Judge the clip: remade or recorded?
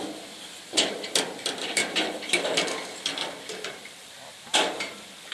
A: recorded